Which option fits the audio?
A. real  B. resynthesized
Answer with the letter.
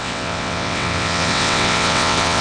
B